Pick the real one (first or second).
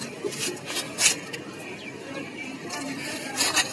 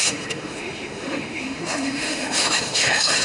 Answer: first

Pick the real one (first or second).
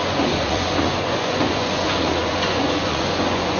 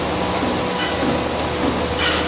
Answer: second